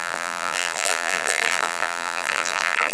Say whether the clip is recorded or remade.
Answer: remade